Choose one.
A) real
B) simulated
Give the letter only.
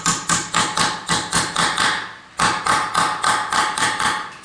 A